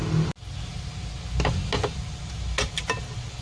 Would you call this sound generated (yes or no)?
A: no